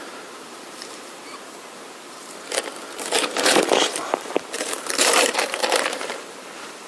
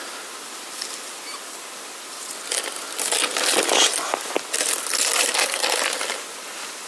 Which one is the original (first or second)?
second